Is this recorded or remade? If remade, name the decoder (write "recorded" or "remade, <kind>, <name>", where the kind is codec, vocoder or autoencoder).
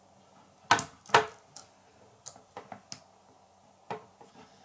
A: recorded